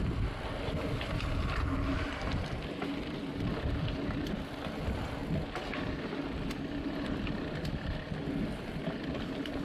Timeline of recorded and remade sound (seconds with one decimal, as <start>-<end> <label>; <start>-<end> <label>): 0.0-9.6 recorded